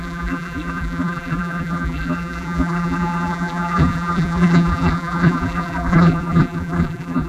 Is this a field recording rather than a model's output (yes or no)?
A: no